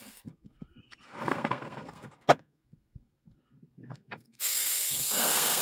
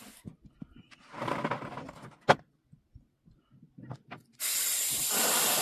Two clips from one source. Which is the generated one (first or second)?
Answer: first